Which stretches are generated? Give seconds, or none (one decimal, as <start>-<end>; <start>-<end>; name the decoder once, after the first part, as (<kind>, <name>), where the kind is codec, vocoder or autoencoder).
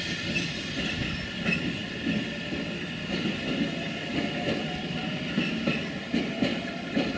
none